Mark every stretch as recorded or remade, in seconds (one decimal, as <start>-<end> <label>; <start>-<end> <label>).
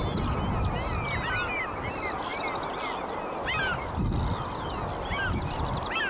0.0-6.1 recorded